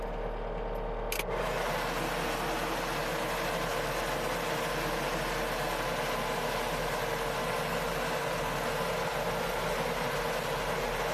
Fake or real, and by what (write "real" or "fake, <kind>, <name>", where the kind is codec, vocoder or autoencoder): real